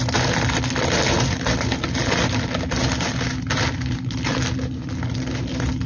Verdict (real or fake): real